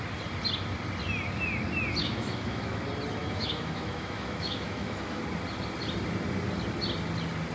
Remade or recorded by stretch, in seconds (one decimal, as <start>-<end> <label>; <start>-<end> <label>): 0.0-2.0 recorded; 2.0-2.8 remade; 2.8-3.2 recorded; 3.2-5.2 remade; 5.2-7.5 recorded